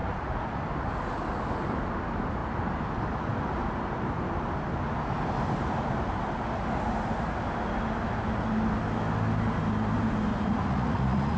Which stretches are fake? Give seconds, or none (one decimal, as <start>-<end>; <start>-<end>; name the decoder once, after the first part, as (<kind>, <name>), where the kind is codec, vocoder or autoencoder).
0.0-0.6 (vocoder, Vocos); 10.3-11.4